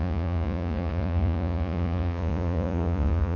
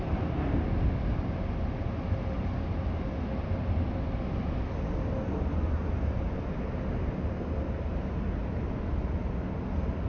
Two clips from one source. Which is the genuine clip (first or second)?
second